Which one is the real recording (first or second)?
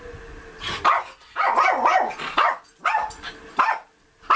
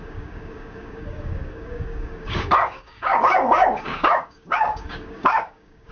first